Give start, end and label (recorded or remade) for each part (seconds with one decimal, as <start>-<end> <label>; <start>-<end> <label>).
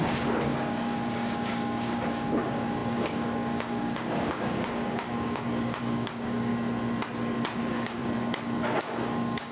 0.0-6.5 remade; 6.5-7.6 recorded; 7.6-8.0 remade; 8.0-8.8 recorded; 8.8-9.5 remade